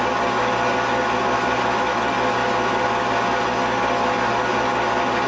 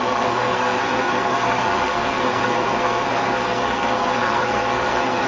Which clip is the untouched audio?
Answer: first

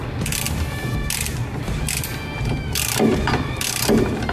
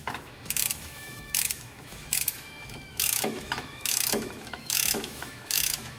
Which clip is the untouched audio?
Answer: first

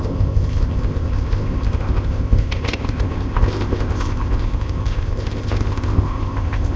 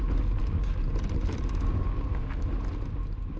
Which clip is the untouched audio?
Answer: second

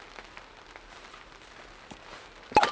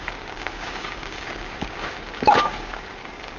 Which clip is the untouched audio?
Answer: first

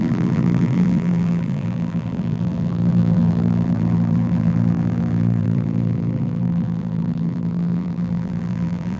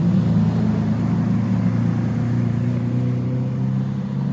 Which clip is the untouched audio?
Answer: second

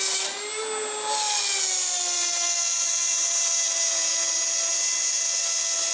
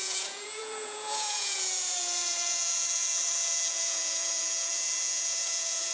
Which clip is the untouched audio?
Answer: first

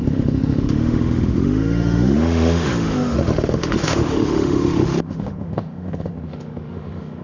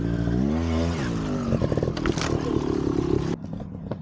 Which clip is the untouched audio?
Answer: second